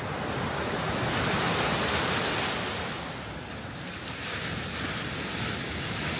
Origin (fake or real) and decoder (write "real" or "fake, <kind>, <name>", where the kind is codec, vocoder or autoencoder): real